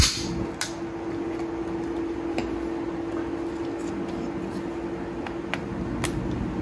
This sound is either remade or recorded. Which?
recorded